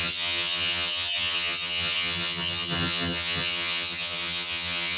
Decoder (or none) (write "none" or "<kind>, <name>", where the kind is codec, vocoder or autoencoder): vocoder, HiFi-GAN